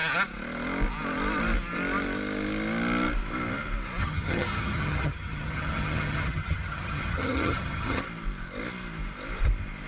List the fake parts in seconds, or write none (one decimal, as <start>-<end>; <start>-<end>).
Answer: 4.0-8.0